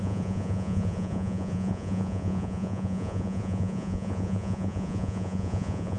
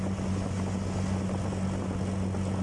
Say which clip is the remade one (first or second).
first